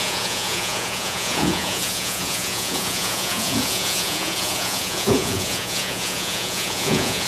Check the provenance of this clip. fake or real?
fake